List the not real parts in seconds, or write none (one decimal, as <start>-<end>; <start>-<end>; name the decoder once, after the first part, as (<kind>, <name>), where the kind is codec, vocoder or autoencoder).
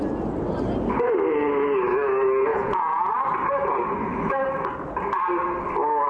2.5-3.1 (vocoder, Vocos)